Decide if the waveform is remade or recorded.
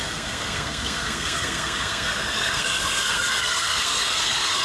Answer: remade